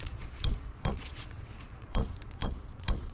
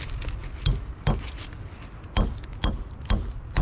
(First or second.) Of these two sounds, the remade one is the first